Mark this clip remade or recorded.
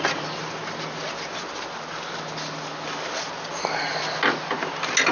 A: recorded